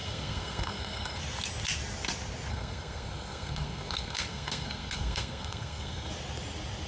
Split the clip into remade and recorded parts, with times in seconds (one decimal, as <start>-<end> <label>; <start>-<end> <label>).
0.0-1.2 remade; 1.2-2.5 recorded; 2.5-6.1 remade; 6.1-6.9 recorded